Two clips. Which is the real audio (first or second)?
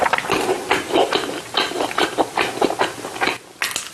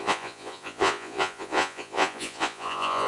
first